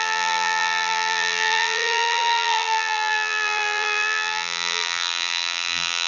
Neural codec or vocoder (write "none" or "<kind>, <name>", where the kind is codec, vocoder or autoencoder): vocoder, BigVGAN v2